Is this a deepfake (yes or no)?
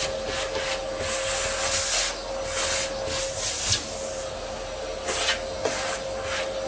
no